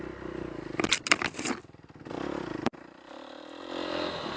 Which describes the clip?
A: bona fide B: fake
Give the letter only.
A